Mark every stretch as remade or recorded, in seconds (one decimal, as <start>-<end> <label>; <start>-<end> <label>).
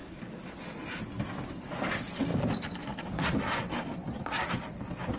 0.0-5.2 recorded